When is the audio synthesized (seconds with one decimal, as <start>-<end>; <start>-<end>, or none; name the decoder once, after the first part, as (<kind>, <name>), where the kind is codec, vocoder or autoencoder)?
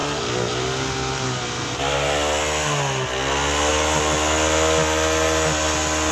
none